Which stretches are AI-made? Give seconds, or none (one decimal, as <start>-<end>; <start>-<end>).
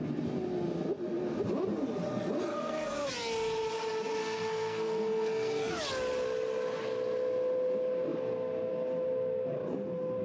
2.5-3.1; 4.2-5.7